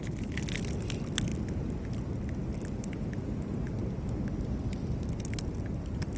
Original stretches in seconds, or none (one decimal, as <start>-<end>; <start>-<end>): 0.0-6.2